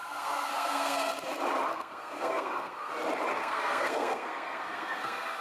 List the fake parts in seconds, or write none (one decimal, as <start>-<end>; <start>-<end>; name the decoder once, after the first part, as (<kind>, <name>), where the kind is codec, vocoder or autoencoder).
0.0-1.1 (codec, SNAC); 1.7-2.9; 3.3-5.4